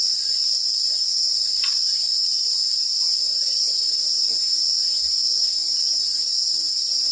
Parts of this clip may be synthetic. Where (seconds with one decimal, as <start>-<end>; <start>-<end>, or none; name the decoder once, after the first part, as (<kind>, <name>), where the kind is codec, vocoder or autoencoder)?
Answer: none